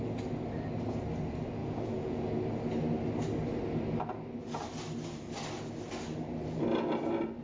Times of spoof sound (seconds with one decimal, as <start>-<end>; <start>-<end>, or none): 1.6-2.3